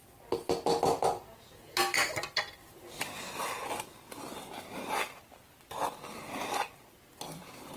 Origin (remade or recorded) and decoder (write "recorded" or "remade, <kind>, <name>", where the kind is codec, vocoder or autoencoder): recorded